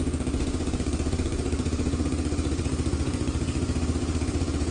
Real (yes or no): no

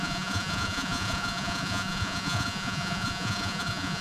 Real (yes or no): no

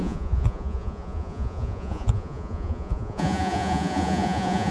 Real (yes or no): no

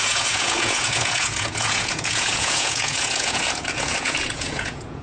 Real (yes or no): no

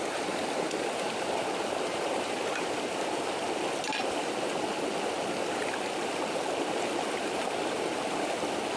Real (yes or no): yes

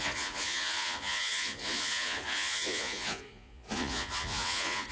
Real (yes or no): no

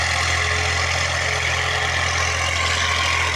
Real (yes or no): yes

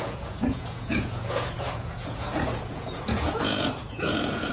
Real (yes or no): no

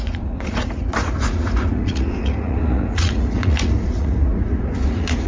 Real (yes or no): no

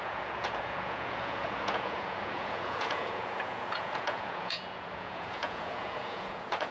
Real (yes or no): no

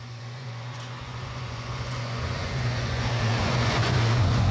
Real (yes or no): no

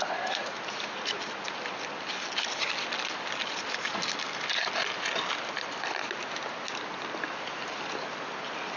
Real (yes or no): yes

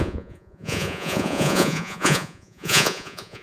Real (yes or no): no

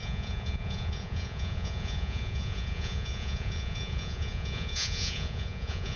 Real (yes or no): no